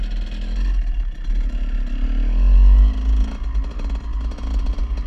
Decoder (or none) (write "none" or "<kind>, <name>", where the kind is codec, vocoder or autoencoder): none